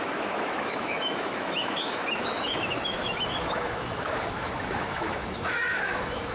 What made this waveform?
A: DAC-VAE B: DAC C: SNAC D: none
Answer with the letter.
A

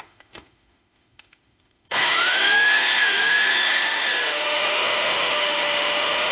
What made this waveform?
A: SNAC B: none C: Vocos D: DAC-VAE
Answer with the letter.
D